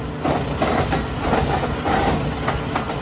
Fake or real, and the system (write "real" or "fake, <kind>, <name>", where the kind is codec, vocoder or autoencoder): real